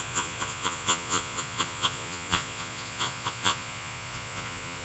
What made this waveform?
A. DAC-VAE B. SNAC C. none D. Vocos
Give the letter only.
D